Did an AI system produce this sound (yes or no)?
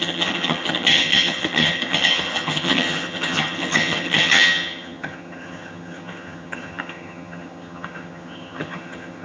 yes